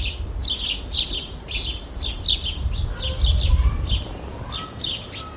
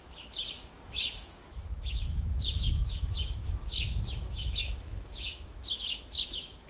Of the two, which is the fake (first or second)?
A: second